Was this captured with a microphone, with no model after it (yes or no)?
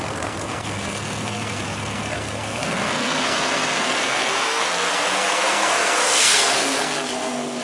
no